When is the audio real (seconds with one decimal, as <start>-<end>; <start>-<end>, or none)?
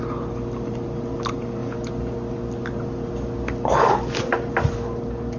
0.0-5.4